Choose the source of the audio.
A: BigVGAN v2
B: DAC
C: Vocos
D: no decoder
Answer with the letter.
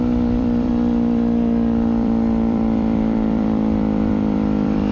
A